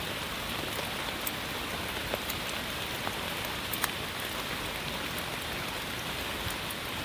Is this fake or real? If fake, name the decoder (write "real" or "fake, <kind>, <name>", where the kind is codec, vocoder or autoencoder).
real